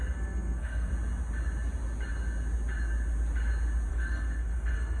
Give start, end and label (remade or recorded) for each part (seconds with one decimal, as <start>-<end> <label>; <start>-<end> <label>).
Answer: 0.0-0.9 remade; 0.9-3.9 recorded; 3.9-5.0 remade